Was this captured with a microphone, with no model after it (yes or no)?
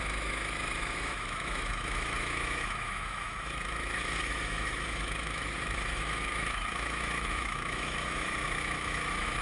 no